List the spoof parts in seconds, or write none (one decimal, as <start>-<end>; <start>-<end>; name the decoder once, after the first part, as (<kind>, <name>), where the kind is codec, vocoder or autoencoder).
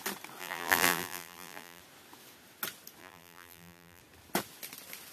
0.4-1.8 (vocoder, BigVGAN v2); 3.0-4.0